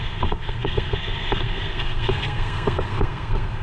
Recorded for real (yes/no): no